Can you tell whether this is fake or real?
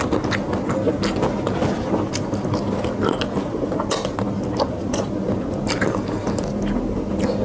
real